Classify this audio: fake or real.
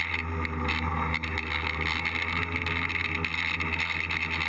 real